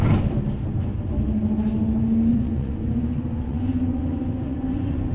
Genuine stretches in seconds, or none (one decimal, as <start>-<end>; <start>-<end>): 0.0-2.3